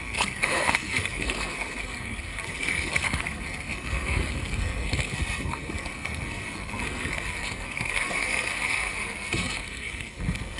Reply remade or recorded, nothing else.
remade